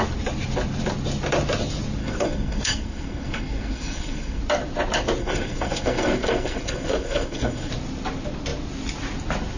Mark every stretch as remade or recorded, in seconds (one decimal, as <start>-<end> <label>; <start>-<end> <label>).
0.0-2.0 recorded; 2.0-4.4 remade; 4.4-5.2 recorded; 5.2-7.7 remade; 7.7-9.6 recorded